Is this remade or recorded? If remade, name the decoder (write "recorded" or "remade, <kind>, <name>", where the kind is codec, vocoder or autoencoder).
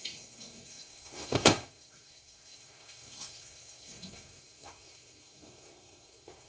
remade, codec, SNAC